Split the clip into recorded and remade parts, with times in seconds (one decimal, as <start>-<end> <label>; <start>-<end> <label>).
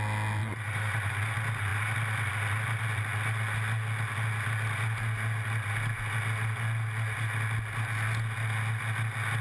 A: 0.0-0.4 recorded; 0.4-1.1 remade; 1.1-9.4 recorded